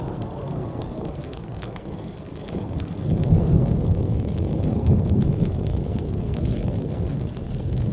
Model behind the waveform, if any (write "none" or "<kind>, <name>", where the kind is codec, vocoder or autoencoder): codec, SNAC